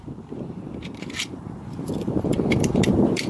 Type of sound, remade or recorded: remade